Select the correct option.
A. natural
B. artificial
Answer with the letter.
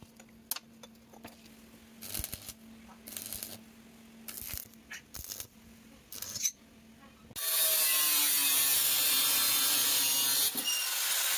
A